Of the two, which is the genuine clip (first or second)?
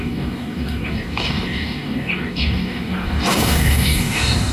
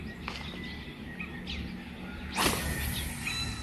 second